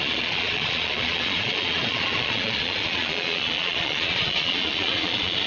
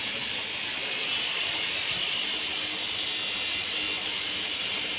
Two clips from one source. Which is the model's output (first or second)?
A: first